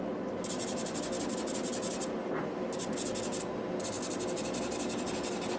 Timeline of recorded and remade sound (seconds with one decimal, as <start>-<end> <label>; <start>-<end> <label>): 0.0-5.6 recorded